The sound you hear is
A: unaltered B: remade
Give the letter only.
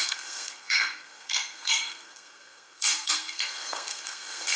B